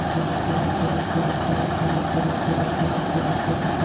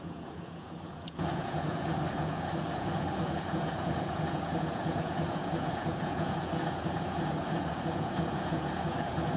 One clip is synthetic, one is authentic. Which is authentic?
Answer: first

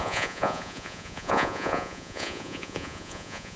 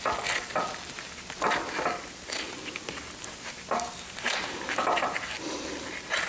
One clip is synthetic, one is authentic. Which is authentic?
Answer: second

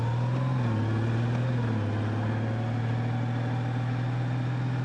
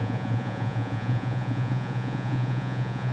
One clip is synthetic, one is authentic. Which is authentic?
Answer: first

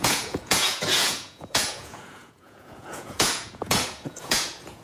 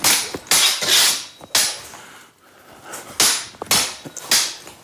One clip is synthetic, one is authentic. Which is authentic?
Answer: second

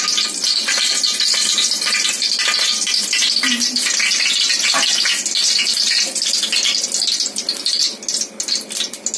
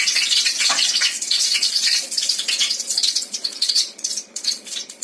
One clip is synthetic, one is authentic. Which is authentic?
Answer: first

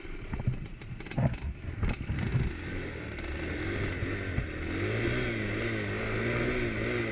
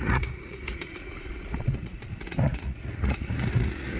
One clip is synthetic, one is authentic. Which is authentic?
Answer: first